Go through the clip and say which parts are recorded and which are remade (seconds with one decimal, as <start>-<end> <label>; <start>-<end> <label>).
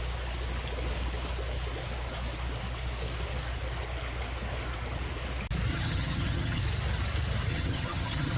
0.0-5.7 recorded; 5.7-6.6 remade; 6.6-7.5 recorded; 7.5-8.4 remade